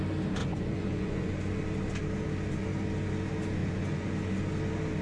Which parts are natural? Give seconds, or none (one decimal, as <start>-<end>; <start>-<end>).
0.0-0.4; 1.3-3.6; 4.1-5.0